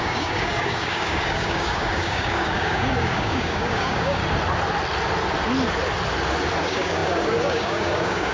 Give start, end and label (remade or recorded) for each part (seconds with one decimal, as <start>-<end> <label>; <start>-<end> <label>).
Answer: 0.0-4.2 remade; 4.2-6.6 recorded; 6.6-8.3 remade